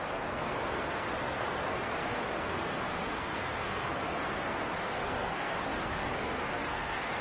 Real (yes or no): no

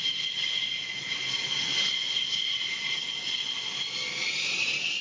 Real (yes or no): yes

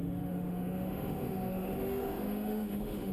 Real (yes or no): no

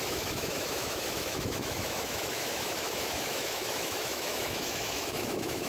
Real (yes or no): no